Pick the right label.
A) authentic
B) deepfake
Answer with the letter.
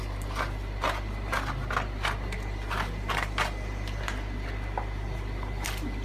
A